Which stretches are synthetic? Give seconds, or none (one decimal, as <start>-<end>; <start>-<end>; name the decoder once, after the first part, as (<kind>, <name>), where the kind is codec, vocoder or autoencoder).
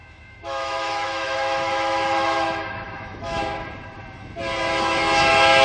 0.0-3.4 (autoencoder, DAC-VAE)